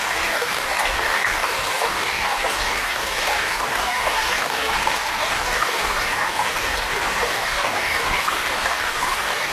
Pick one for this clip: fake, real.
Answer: fake